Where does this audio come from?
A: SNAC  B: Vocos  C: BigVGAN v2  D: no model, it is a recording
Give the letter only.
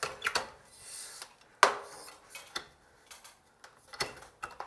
D